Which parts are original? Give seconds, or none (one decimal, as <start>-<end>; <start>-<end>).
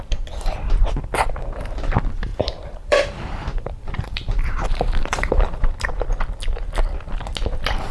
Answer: 0.0-2.3; 5.7-7.9